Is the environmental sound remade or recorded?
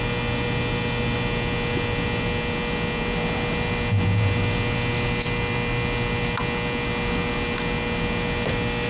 recorded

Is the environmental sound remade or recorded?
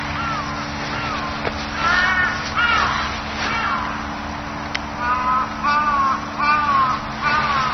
recorded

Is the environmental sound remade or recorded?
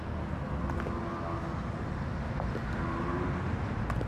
recorded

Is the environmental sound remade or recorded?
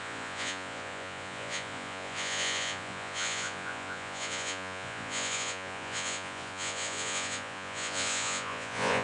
remade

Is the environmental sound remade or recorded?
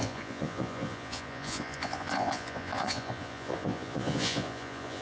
remade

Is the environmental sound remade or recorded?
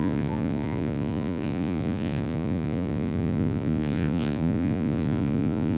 remade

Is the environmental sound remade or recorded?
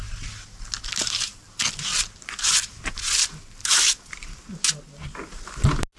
recorded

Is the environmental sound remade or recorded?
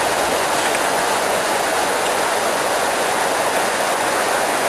remade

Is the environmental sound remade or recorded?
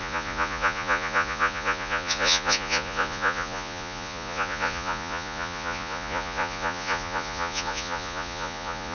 remade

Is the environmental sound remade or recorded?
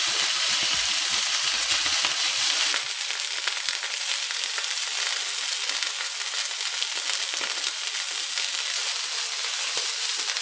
recorded